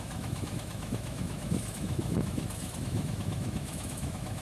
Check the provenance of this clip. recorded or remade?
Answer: remade